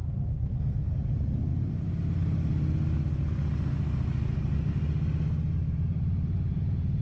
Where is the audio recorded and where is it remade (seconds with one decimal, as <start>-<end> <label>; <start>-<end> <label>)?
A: 0.0-0.9 remade; 0.9-7.0 recorded